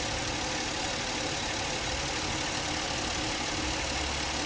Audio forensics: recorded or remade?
recorded